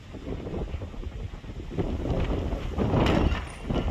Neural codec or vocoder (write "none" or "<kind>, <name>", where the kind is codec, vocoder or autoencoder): none